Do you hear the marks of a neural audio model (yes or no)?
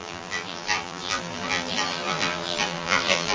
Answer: yes